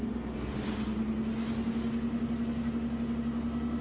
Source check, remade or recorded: recorded